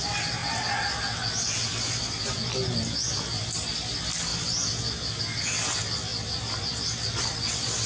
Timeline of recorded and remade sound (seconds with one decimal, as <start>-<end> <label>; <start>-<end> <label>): 0.0-7.9 recorded

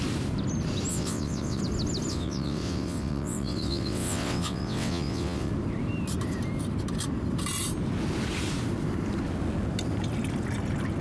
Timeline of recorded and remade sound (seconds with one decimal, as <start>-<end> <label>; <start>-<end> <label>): 0.0-0.9 recorded; 0.9-1.6 remade; 1.6-2.1 recorded; 2.1-5.5 remade; 5.5-11.0 recorded

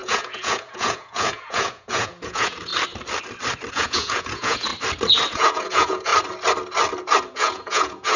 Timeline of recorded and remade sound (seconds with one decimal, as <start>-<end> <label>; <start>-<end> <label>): 0.0-2.7 remade; 2.7-3.7 recorded; 3.7-4.7 remade; 4.7-5.3 recorded; 5.3-6.1 remade; 6.1-7.3 recorded; 7.3-8.2 remade

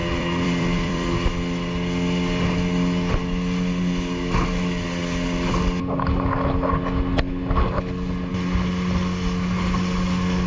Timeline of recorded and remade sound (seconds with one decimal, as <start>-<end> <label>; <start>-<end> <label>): 0.0-1.3 remade; 1.3-10.5 recorded

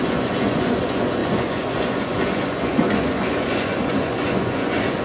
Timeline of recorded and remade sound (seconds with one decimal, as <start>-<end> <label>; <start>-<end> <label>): 0.0-5.0 remade

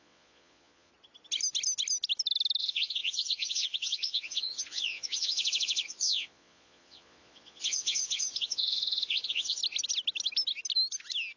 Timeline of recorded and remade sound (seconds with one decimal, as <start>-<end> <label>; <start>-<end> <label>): 0.0-0.9 remade; 0.9-2.6 recorded; 2.6-9.6 remade; 9.6-11.4 recorded

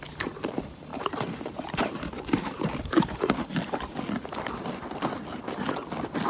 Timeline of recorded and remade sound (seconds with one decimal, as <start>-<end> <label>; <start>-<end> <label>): 0.0-3.5 remade; 3.5-6.3 recorded